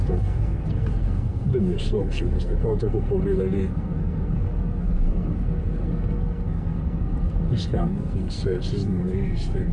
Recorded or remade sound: remade